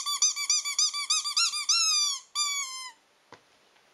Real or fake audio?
real